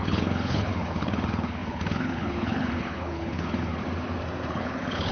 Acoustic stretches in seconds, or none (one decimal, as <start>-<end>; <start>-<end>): 3.8-4.5